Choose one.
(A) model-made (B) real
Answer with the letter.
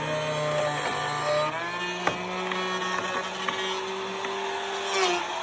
B